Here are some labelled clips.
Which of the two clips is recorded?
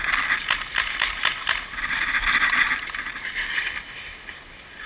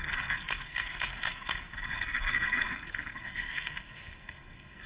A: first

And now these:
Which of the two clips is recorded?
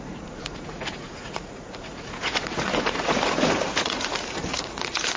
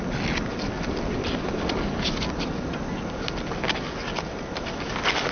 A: second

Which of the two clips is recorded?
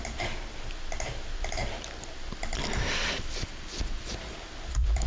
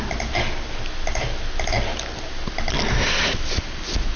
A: second